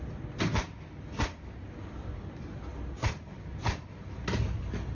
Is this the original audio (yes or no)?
yes